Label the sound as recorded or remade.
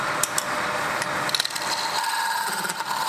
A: recorded